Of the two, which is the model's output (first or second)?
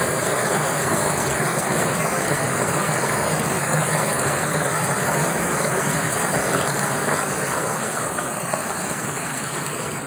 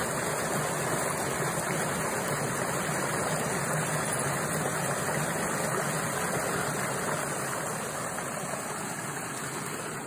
first